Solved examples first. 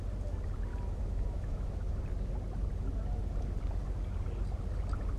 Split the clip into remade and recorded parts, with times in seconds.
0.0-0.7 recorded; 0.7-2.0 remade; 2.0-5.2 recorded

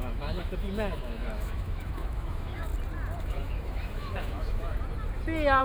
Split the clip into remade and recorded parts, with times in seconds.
0.0-2.7 remade; 2.7-3.2 recorded; 3.2-4.7 remade; 4.7-5.6 recorded

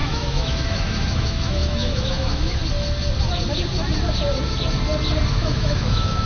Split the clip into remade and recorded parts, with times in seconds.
0.0-2.6 remade; 2.6-5.3 recorded; 5.3-6.3 remade